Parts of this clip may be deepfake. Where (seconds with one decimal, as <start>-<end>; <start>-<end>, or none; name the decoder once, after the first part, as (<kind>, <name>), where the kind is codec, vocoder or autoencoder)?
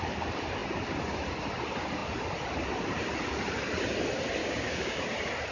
4.4-5.0 (codec, DAC)